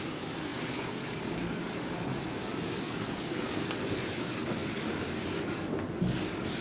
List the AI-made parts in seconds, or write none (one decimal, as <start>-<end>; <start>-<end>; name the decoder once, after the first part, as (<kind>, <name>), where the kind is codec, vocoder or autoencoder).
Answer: 0.0-6.6 (codec, DAC)